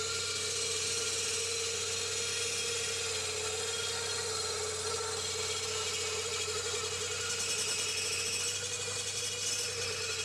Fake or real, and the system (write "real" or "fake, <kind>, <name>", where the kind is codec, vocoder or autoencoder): real